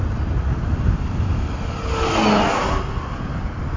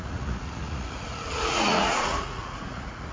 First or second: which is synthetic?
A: second